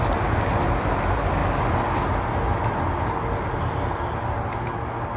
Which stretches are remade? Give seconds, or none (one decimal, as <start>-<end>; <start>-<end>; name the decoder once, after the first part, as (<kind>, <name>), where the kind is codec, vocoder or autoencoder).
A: none